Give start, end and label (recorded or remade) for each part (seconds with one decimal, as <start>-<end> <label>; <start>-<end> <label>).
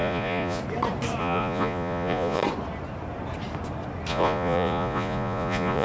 0.0-0.6 remade; 0.6-1.2 recorded; 1.2-2.4 remade; 2.4-4.1 recorded; 4.1-5.8 remade